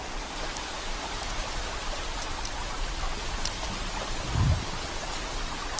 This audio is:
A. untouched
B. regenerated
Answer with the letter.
A